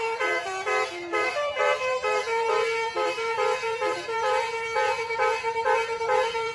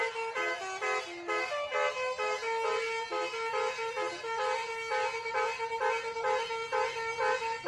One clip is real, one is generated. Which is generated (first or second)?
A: first